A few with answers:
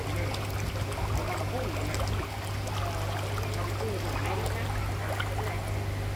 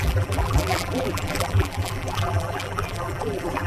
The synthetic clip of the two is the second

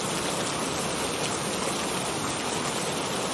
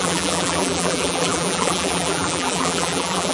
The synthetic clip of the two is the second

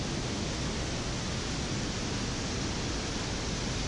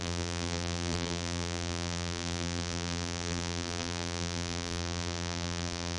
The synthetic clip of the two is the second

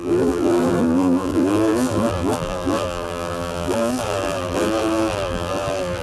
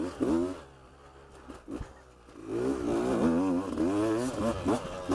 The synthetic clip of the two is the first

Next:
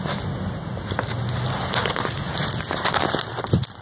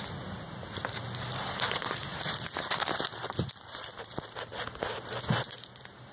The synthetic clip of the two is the second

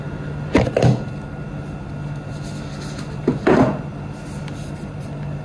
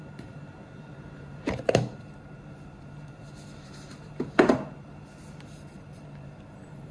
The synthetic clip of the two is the second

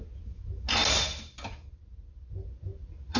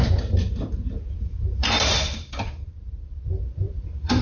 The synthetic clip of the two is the second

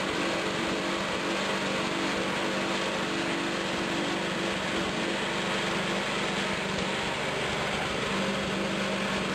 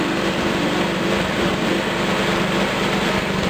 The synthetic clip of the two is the second